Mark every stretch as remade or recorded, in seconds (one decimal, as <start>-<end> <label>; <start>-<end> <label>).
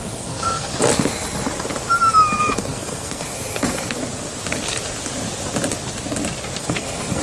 0.0-0.7 remade; 0.7-2.4 recorded; 2.4-4.0 remade; 4.0-6.6 recorded; 6.6-7.2 remade